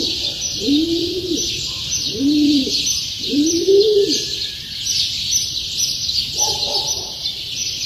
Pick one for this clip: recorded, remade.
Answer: remade